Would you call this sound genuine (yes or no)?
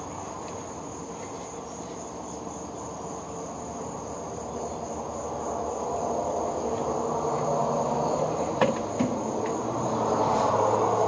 yes